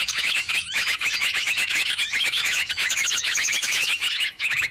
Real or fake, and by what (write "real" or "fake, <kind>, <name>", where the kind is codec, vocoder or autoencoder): fake, autoencoder, DAC-VAE